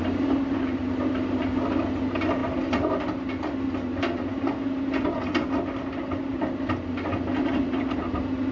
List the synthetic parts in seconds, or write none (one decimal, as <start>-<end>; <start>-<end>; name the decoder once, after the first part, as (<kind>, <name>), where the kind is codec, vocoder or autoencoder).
none